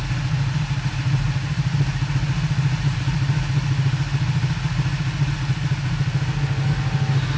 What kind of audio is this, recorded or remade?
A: recorded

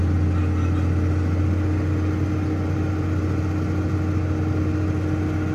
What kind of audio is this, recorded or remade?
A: recorded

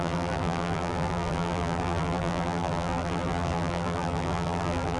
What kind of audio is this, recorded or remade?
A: remade